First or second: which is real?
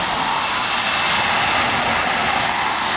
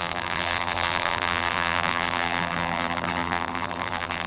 first